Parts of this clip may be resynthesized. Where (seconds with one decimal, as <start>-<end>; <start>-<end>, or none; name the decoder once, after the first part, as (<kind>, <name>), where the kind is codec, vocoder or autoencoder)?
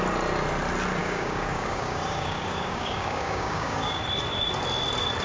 1.0-4.0 (codec, DAC)